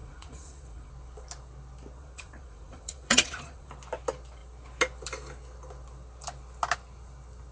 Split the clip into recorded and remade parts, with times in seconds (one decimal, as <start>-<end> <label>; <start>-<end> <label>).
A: 0.0-0.9 remade; 0.9-2.0 recorded; 2.0-3.7 remade; 3.7-7.5 recorded